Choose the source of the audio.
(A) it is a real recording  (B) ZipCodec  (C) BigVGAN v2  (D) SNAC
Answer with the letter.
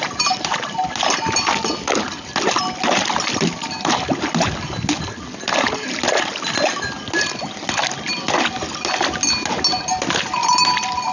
A